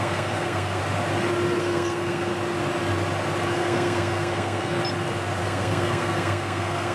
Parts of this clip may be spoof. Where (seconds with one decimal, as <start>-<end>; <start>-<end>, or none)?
0.0-0.8; 1.6-2.3; 3.5-4.8; 5.4-6.9